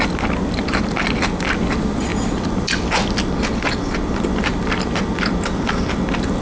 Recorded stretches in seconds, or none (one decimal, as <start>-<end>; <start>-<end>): 0.0-6.4